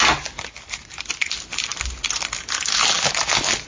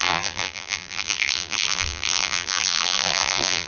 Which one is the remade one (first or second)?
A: second